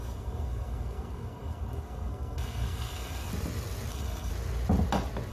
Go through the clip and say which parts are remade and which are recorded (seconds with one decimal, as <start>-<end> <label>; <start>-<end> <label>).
0.0-3.3 remade; 3.3-3.9 recorded; 3.9-4.3 remade; 4.3-5.3 recorded